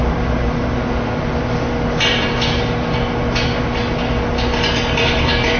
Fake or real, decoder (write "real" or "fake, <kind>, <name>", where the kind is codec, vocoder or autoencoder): real